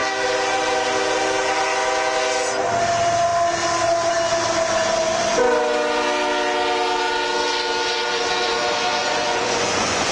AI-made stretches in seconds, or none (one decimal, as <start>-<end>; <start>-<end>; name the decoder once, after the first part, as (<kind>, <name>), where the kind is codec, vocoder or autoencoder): 9.0-10.1 (vocoder, Vocos)